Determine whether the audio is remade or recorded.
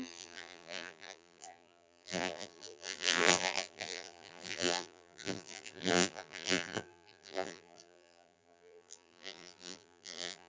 remade